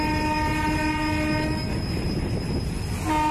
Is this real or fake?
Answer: real